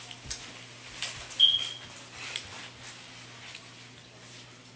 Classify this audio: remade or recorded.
recorded